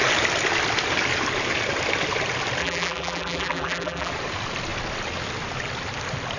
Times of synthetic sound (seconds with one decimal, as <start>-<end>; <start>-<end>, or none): 2.6-4.1

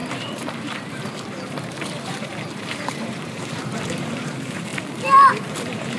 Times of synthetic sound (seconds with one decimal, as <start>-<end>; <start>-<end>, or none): 0.0-4.7; 5.3-6.0

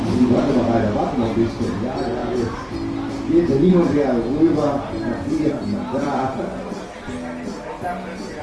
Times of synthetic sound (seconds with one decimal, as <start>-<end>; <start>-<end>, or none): 6.0-7.1

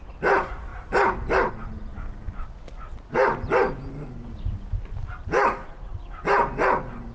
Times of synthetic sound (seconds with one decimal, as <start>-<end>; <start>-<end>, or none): none

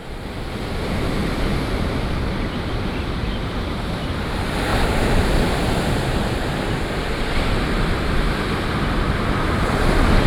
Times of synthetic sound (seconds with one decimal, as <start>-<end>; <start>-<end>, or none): 1.2-4.2

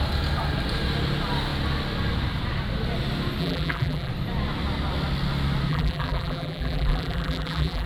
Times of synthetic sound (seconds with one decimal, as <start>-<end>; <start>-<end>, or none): 3.4-4.1; 5.7-7.9